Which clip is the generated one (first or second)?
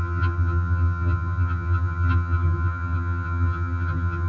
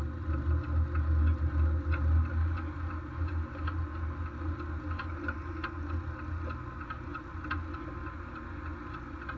first